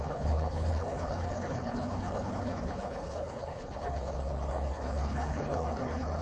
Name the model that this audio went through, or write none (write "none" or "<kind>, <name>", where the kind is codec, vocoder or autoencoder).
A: codec, HILCodec